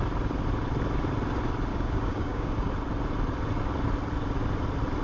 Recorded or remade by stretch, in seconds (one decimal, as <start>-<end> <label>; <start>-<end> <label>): 0.0-1.7 recorded; 1.7-2.7 remade; 2.7-5.0 recorded